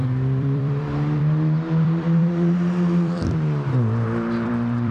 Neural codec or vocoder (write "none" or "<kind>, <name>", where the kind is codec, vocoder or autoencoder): vocoder, BigVGAN v2